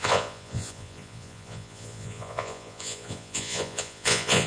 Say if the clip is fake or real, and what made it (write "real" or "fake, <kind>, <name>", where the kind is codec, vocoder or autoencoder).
fake, vocoder, Vocos